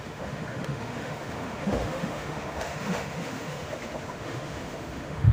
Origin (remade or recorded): remade